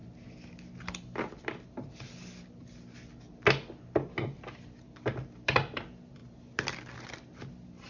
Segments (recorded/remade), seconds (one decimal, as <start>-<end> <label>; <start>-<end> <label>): 0.0-7.9 recorded

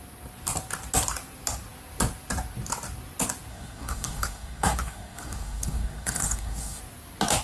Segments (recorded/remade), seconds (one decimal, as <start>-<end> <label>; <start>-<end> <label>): 0.0-3.5 recorded; 3.5-6.8 remade; 6.8-7.4 recorded

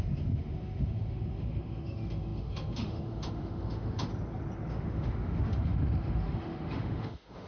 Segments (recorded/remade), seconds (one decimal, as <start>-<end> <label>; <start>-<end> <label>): 0.0-4.1 remade; 4.1-4.7 recorded; 4.7-7.5 remade

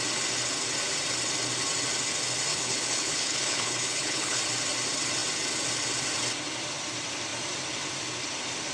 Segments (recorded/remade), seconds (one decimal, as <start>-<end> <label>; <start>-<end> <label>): 0.0-2.5 recorded; 2.5-4.4 remade; 4.4-8.7 recorded

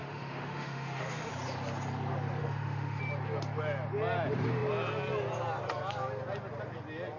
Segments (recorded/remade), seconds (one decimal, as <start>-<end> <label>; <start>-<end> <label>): 0.0-1.3 remade; 1.3-2.4 recorded; 2.4-3.0 remade; 3.0-7.2 recorded

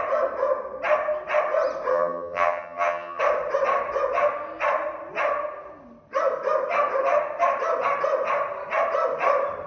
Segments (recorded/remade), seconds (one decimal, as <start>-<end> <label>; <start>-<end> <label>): 0.0-1.9 recorded; 1.9-3.2 remade; 3.2-9.7 recorded

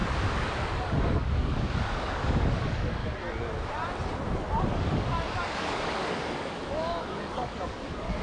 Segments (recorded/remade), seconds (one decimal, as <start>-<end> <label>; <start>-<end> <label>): 0.0-3.0 remade; 3.0-4.7 recorded; 4.7-8.2 remade